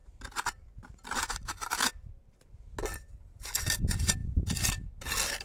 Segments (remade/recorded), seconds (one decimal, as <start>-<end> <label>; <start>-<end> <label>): 0.0-2.1 remade; 2.1-5.4 recorded